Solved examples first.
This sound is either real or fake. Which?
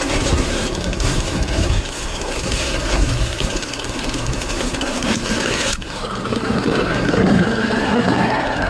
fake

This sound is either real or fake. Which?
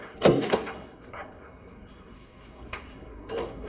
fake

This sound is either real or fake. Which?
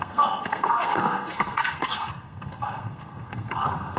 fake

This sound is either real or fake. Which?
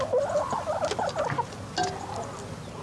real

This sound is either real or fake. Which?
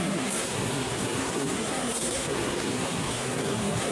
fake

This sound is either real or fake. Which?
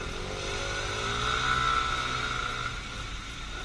real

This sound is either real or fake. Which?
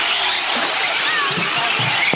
real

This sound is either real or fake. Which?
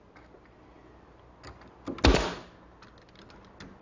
real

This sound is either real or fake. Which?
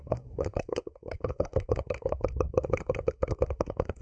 fake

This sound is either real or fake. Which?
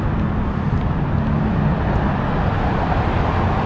real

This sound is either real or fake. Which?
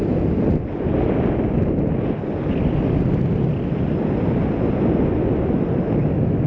real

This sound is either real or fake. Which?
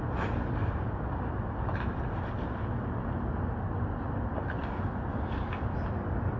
real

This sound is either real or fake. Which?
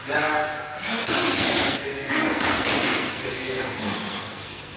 fake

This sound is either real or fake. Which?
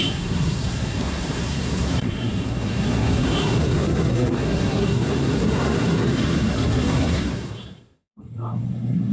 fake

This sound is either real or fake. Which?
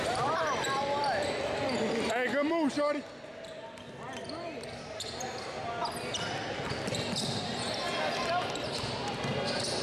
real